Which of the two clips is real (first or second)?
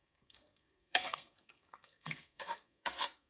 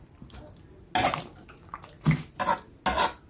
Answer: second